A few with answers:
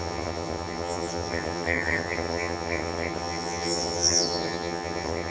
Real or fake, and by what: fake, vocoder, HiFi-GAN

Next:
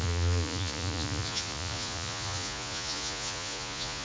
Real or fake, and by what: fake, vocoder, Vocos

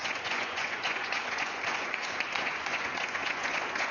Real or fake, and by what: fake, vocoder, Vocos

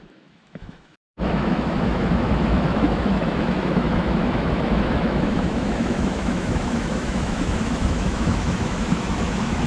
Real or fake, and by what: fake, autoencoder, DAC-VAE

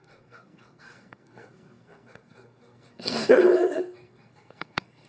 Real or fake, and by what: fake, codec, SNAC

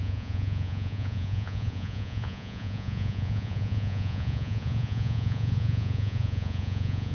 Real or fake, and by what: fake, vocoder, Vocos